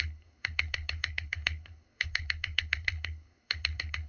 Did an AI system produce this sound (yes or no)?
yes